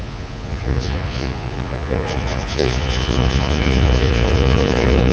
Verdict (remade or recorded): remade